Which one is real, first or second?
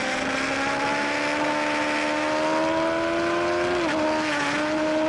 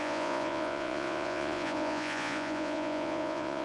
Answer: first